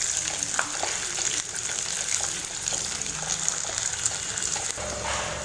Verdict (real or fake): real